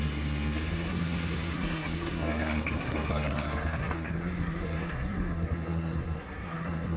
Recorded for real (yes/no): no